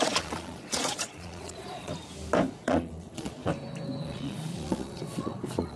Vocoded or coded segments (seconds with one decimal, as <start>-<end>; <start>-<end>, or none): 0.0-1.9; 2.5-3.5; 4.0-5.8

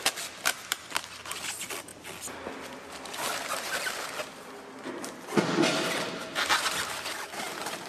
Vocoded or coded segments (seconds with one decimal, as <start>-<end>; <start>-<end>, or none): none

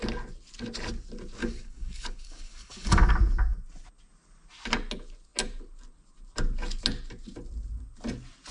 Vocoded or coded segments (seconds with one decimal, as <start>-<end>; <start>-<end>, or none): 1.4-3.1

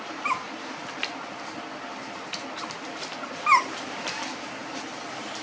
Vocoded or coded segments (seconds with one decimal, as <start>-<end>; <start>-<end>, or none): none

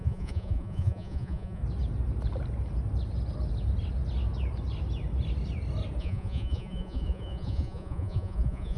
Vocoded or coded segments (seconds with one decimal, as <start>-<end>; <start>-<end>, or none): 0.0-1.6; 6.0-8.8

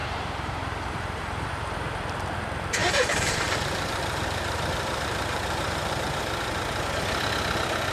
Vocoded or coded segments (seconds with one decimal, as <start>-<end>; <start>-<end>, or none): 0.0-1.5; 2.8-6.2

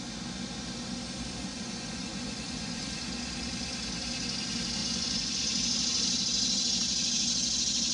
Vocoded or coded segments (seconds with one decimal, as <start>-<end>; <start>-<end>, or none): 1.5-3.0; 4.8-5.4